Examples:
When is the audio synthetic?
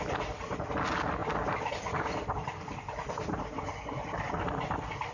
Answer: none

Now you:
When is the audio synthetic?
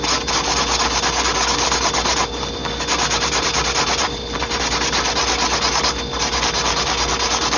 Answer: none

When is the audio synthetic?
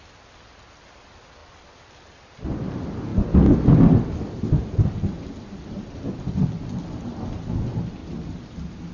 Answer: 8.0-8.9 (vocoder, BigVGAN v2)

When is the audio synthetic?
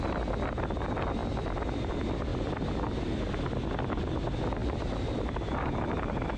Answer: 4.6-6.4 (vocoder, BigVGAN v2)